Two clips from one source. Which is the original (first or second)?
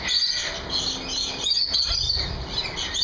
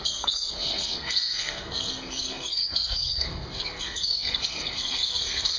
first